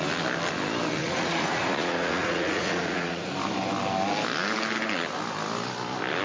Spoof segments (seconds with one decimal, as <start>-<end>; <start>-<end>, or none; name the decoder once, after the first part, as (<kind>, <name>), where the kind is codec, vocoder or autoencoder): 1.0-3.3 (vocoder, Vocos)

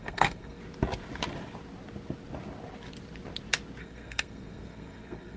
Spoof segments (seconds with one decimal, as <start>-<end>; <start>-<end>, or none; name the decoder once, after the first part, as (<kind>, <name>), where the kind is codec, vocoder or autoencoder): 0.0-0.6 (codec, SNAC); 3.8-5.4

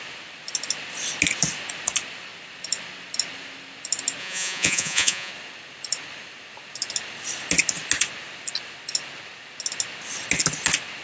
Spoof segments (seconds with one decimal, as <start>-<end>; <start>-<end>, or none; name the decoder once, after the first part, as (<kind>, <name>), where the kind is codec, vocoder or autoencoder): 4.2-5.3 (vocoder, Vocos)

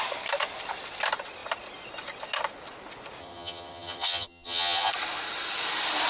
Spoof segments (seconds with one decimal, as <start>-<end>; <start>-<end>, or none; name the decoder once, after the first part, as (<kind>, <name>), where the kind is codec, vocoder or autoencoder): 3.2-4.9 (vocoder, HiFi-GAN)

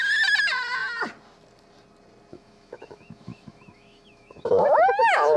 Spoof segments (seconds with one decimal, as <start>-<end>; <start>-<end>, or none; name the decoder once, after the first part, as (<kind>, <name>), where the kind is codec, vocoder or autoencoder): 2.3-5.4 (autoencoder, DAC-VAE)

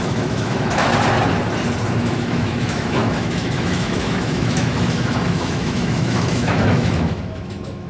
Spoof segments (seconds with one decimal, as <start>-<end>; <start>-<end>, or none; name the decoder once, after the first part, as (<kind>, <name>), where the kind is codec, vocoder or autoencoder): 0.0-0.9 (autoencoder, DAC-VAE); 2.0-7.9

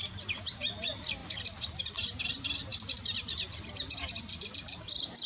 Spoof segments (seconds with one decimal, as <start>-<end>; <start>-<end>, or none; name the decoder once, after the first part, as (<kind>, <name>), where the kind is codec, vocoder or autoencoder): none